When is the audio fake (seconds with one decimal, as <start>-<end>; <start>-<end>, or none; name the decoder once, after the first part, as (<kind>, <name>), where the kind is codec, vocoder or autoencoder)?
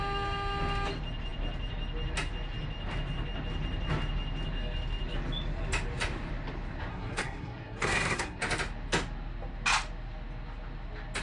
6.9-8.4 (codec, SNAC)